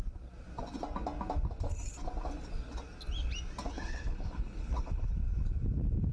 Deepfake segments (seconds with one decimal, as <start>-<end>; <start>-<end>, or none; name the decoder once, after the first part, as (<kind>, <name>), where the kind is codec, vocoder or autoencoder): 3.7-5.2 (codec, HILCodec)